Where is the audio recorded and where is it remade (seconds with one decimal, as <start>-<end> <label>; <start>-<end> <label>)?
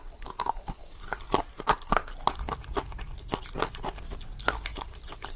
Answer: 0.0-5.4 recorded